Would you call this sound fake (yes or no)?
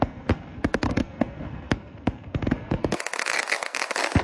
yes